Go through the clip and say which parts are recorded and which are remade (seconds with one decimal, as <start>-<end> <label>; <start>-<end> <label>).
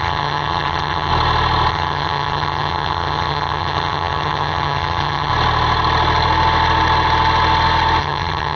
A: 0.0-1.1 remade; 1.1-1.7 recorded; 1.7-5.3 remade; 5.3-8.0 recorded; 8.0-8.6 remade